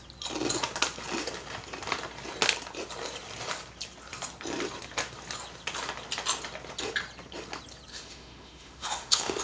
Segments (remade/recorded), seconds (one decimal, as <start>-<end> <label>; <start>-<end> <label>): 0.0-7.9 recorded; 7.9-9.4 remade